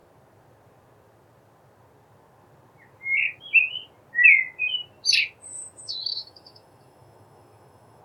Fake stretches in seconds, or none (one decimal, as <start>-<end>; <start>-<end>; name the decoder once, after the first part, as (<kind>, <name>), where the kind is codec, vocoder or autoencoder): 5.5-8.0 (autoencoder, DAC-VAE)